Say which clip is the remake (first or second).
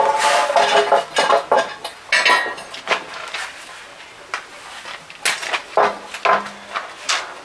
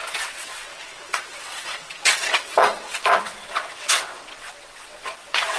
second